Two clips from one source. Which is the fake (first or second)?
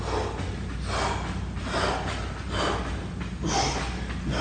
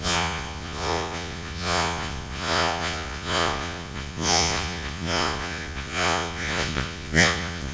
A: second